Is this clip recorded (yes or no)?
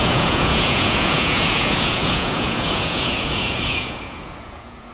no